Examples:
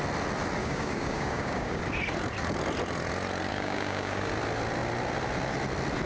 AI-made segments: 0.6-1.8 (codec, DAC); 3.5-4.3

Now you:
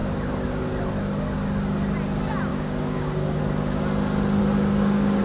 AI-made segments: 2.5-3.4 (codec, DAC); 4.4-5.2

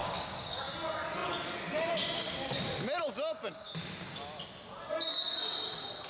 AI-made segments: 0.0-0.6 (codec, DAC)

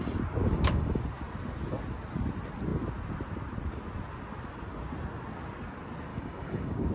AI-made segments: 0.4-1.0 (codec, DAC); 6.1-6.9

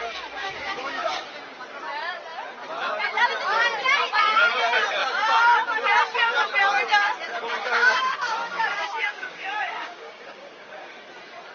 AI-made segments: 0.4-1.2 (codec, DAC); 7.6-11.0

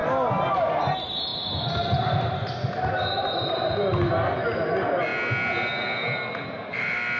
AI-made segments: none

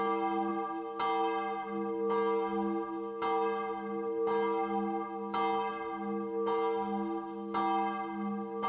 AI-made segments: none

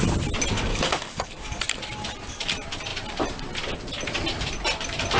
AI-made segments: 0.7-1.6 (codec, DAC)